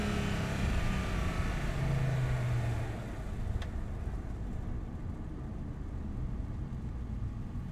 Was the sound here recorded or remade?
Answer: recorded